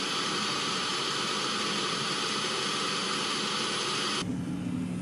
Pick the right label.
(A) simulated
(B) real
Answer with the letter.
B